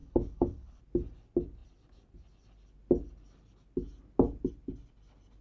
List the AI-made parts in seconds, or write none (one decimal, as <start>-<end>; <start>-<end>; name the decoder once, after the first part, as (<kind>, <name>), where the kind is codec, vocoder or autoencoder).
0.0-0.8 (codec, HILCodec)